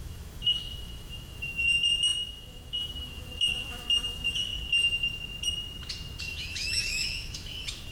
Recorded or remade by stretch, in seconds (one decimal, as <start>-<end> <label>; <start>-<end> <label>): 0.0-4.5 remade; 4.5-6.2 recorded; 6.2-7.9 remade